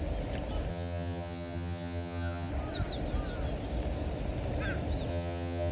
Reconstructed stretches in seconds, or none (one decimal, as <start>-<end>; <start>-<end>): 0.7-2.5; 5.1-5.7